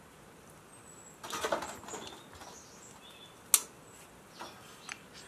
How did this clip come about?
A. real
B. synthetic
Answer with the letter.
A